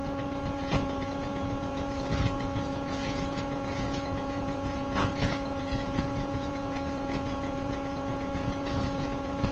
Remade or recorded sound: remade